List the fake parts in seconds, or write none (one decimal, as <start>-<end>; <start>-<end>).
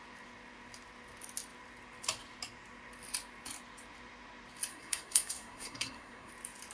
4.7-6.3